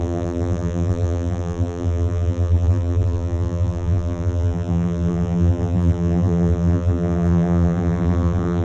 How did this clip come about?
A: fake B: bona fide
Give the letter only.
A